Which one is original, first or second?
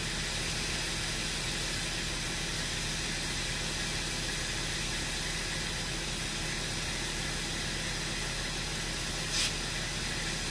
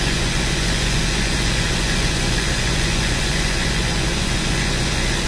first